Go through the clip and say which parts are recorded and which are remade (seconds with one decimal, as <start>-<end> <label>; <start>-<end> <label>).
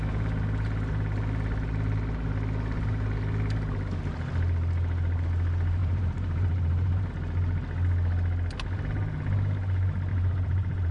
0.0-5.8 recorded; 5.8-7.1 remade; 7.1-10.1 recorded; 10.1-10.9 remade